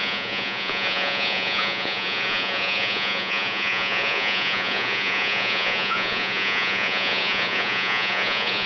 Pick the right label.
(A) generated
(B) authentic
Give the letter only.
A